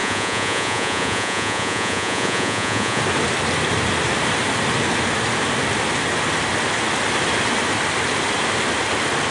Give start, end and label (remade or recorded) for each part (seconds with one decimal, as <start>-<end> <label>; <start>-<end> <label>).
0.0-3.0 remade; 3.0-9.3 recorded

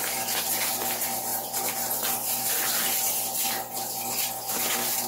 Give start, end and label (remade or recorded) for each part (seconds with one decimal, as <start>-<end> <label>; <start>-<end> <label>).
0.0-5.1 recorded

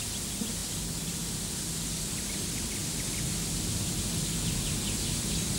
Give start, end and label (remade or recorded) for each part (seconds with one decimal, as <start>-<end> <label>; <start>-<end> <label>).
0.0-0.6 recorded; 0.6-2.3 remade; 2.3-2.8 recorded; 2.8-3.9 remade; 3.9-5.6 recorded

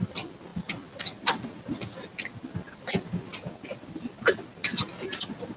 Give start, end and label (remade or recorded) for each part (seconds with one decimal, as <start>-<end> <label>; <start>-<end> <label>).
0.0-5.6 recorded